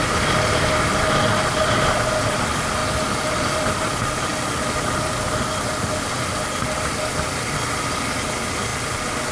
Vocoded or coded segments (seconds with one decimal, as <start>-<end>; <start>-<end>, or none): none